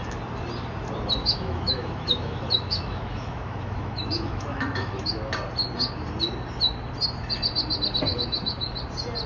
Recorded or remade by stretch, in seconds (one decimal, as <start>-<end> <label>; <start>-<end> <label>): 0.0-1.2 recorded; 1.2-5.4 remade; 5.4-8.1 recorded; 8.1-8.8 remade; 8.8-9.3 recorded